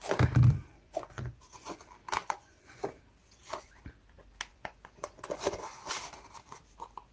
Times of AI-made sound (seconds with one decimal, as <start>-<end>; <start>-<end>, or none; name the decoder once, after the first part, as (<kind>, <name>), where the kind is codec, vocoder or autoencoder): 0.7-1.8 (vocoder, Vocos); 2.2-2.8; 3.2-3.7; 4.5-5.9